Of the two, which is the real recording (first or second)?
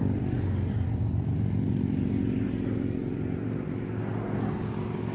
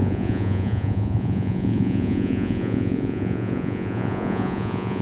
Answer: first